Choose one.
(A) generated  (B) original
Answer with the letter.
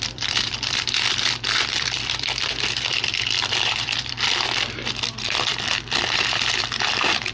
A